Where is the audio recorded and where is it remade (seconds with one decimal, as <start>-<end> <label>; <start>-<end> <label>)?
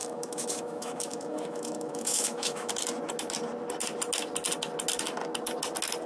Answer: 0.0-2.7 remade; 2.7-6.1 recorded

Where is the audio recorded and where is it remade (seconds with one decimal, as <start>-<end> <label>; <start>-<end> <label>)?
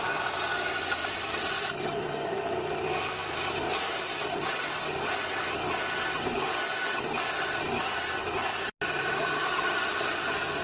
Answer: 0.0-10.6 recorded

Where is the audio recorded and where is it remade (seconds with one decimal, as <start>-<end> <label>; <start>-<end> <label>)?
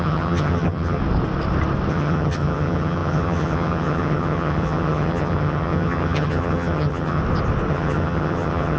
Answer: 0.0-1.0 remade; 1.0-1.9 recorded; 1.9-7.2 remade; 7.2-7.7 recorded; 7.7-8.8 remade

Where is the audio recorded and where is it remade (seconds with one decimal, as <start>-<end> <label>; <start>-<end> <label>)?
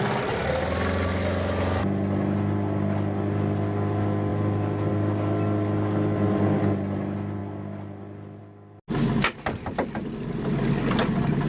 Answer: 0.0-11.5 recorded